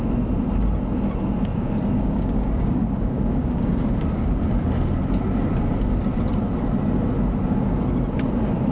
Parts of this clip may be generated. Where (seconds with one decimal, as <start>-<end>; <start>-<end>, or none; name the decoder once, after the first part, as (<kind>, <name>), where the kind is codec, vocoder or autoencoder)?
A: 1.5-4.3 (codec, DAC)